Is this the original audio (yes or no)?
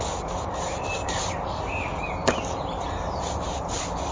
no